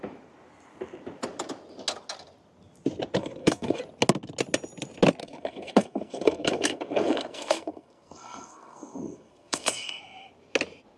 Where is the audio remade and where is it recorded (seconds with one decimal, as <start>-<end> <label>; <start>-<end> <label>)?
0.0-3.2 recorded; 3.2-3.8 remade; 3.8-5.2 recorded; 5.2-10.0 remade; 10.0-11.0 recorded